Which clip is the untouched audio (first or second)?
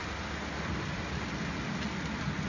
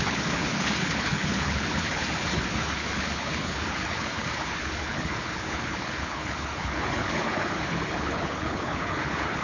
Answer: first